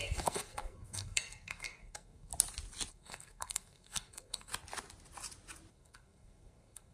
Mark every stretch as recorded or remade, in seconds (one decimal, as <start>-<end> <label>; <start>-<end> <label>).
0.0-2.3 remade; 2.3-2.9 recorded; 2.9-4.5 remade; 4.5-5.7 recorded; 5.7-6.9 remade